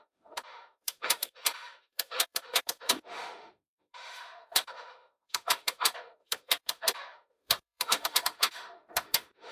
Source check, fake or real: fake